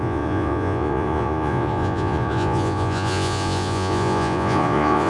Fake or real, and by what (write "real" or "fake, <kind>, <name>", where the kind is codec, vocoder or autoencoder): fake, vocoder, Vocos